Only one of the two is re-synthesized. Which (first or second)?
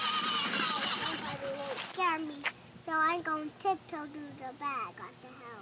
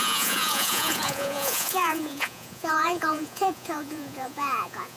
second